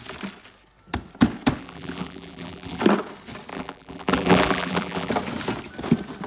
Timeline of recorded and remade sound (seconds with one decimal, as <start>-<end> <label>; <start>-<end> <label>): 0.0-1.6 recorded; 1.6-2.8 remade; 2.8-3.5 recorded; 3.5-5.1 remade; 5.1-6.3 recorded